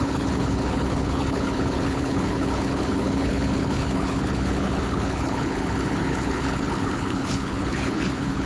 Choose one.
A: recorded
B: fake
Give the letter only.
B